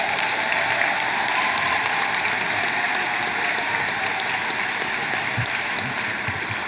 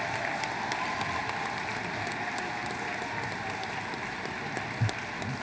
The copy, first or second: first